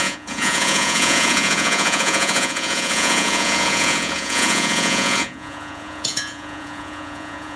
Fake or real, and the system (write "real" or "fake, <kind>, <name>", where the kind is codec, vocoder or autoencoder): fake, vocoder, Vocos